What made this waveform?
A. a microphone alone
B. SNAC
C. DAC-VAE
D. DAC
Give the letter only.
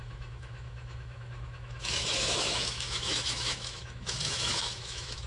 C